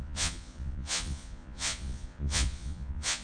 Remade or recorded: remade